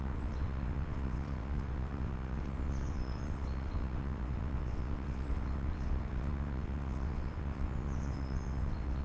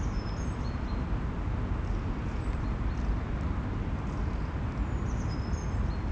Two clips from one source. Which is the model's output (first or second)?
first